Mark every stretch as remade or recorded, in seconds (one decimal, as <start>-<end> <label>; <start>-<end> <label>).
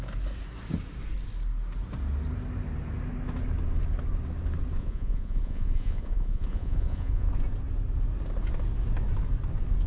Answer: 0.0-4.8 recorded; 4.8-7.3 remade; 7.3-9.9 recorded